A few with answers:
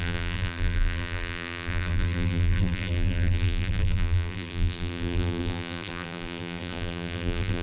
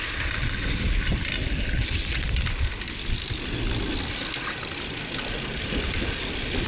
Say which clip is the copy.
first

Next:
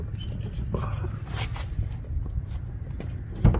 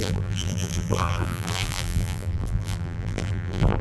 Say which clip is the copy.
second